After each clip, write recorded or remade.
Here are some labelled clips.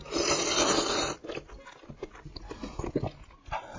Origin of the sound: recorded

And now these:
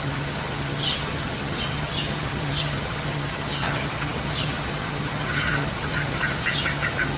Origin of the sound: remade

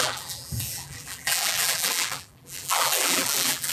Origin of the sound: remade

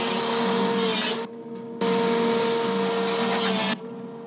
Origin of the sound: recorded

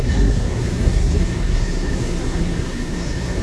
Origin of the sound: remade